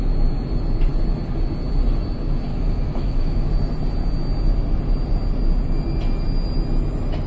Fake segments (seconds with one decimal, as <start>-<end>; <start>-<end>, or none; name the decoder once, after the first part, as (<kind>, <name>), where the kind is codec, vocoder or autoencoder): 2.5-3.5 (autoencoder, DAC-VAE)